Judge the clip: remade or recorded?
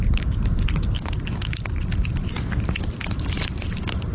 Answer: recorded